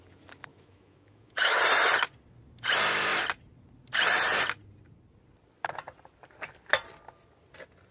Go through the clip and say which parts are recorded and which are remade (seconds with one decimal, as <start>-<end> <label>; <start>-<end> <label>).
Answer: 0.0-0.5 recorded; 0.5-1.6 remade; 1.6-7.9 recorded